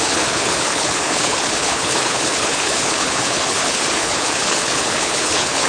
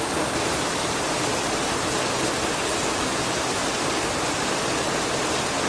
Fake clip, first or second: first